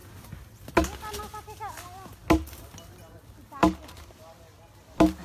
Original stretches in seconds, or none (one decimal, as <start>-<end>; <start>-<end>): 0.0-5.2